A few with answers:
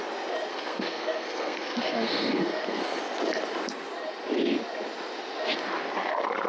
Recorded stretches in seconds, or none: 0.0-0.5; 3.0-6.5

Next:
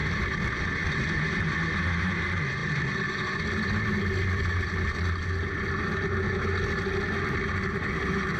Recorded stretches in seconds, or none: 0.0-8.4

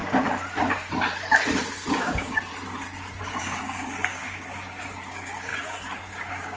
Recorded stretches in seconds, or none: 0.0-2.0; 2.5-3.2

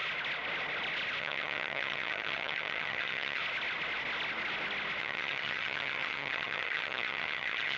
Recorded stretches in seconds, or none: 0.0-1.2; 3.4-5.0

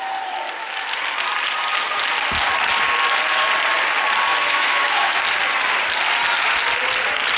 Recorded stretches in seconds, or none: 0.0-4.3; 5.2-7.4